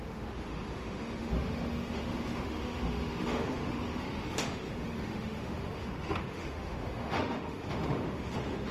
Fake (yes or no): yes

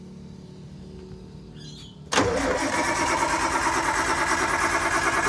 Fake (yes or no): no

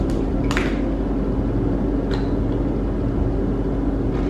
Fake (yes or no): no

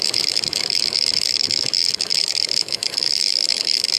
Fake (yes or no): yes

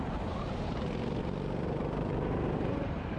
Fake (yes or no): no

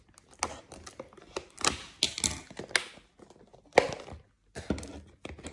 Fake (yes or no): no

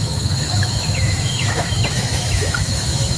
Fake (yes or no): yes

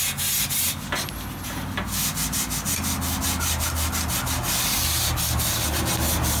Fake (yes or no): no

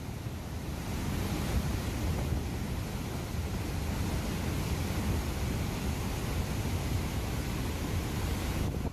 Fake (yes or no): no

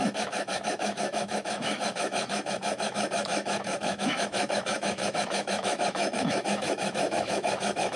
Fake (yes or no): yes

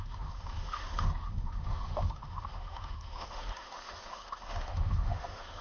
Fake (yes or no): yes